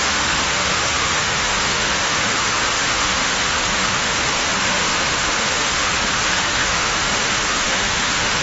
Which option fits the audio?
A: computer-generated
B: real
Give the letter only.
A